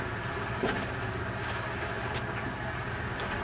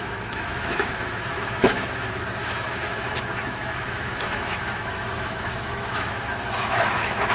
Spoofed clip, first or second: second